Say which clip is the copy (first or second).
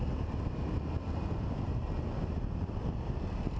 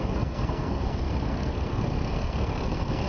second